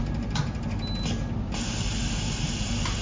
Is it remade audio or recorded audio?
recorded